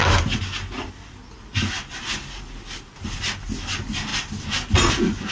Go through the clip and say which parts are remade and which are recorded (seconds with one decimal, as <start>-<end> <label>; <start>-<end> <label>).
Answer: 0.0-5.3 recorded